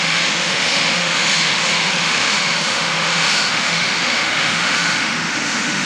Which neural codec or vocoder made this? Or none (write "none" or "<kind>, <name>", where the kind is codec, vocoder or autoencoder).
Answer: autoencoder, DAC-VAE